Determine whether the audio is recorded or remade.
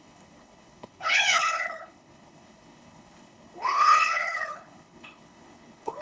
remade